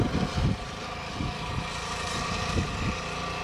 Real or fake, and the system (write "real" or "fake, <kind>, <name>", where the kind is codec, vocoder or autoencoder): real